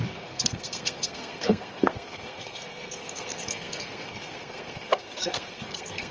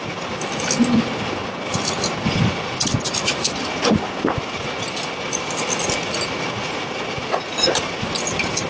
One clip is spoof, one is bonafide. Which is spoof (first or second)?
first